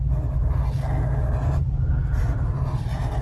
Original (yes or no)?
yes